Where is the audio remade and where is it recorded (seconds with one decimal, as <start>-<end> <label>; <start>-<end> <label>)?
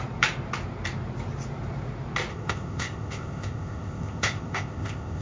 0.0-2.3 recorded; 2.3-5.2 remade